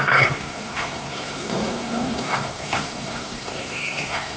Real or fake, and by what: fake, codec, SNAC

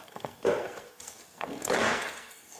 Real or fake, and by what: fake, codec, SNAC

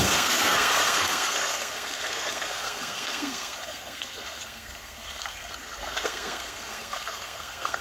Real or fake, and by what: fake, codec, SNAC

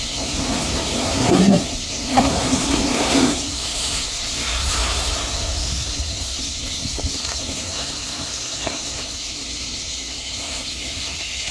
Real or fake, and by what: fake, codec, SNAC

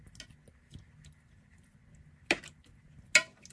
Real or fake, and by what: real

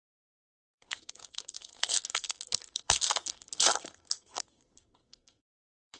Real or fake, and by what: fake, codec, SNAC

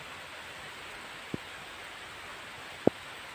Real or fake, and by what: real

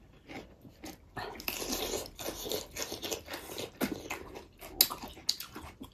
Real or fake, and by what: real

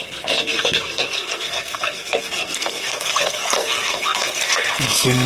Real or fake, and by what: fake, codec, SNAC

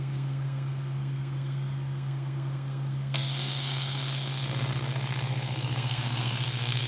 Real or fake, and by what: fake, codec, SNAC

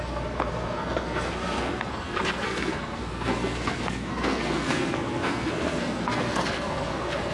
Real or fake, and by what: fake, codec, SNAC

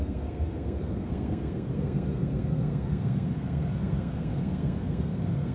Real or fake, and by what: fake, codec, SNAC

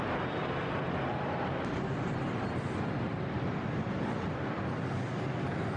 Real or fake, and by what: real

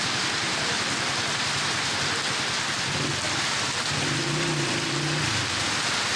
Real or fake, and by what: real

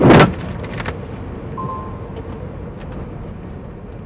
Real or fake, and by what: real